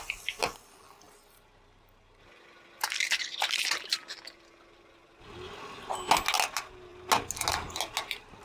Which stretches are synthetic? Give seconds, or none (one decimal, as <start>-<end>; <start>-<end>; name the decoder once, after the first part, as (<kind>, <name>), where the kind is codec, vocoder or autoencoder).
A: none